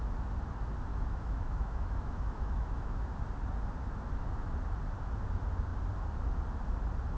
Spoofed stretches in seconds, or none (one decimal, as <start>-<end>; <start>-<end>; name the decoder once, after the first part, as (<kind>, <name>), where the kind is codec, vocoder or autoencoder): 0.9-3.2 (autoencoder, DAC-VAE)